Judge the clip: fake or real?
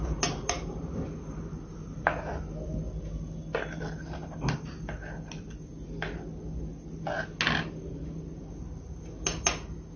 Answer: real